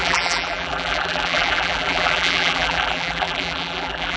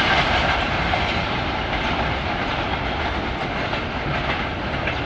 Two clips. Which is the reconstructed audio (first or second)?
first